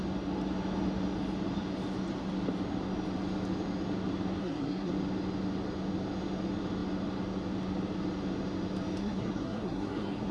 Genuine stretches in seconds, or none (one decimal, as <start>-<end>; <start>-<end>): 0.0-4.4; 4.9-9.0